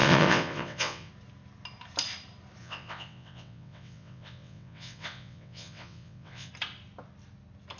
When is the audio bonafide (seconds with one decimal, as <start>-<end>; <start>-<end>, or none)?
1.1-2.6; 6.5-7.8